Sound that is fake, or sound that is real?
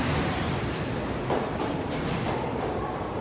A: fake